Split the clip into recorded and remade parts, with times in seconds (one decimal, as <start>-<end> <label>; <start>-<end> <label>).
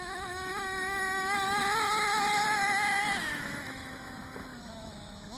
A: 0.0-1.6 remade; 1.6-3.2 recorded; 3.2-5.4 remade